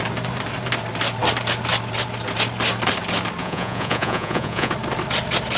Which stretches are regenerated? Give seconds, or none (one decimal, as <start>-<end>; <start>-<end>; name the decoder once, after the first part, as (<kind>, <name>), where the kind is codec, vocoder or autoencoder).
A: 3.4-4.7 (vocoder, Vocos)